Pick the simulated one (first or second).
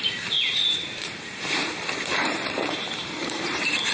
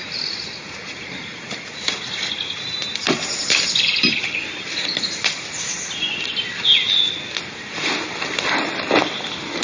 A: first